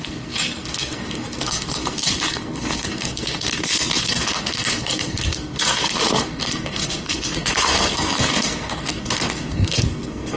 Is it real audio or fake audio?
fake